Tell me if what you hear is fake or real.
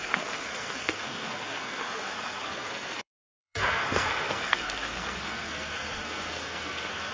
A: fake